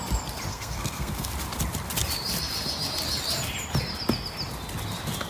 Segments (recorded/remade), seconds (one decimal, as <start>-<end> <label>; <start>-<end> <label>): 0.0-0.5 recorded; 0.5-1.3 remade; 1.3-5.3 recorded